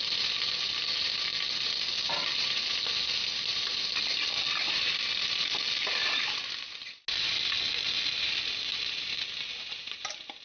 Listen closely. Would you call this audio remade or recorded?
recorded